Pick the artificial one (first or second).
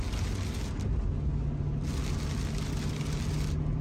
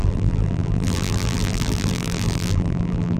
second